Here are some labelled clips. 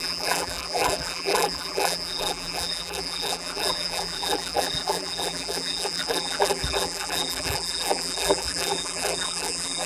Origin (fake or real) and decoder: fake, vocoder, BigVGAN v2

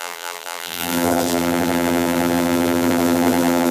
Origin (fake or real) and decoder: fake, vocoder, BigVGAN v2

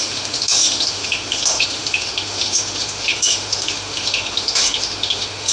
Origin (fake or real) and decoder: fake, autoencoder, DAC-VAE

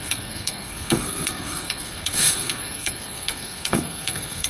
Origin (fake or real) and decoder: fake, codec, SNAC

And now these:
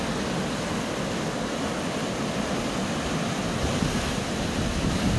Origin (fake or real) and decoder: real